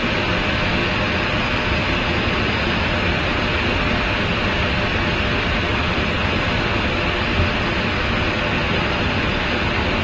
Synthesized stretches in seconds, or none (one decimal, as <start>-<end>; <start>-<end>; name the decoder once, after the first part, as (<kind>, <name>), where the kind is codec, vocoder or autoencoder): 5.7-6.4 (vocoder, BigVGAN v2); 8.6-9.4